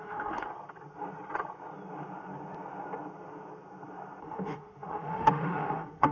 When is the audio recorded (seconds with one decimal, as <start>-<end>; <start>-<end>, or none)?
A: 0.5-4.2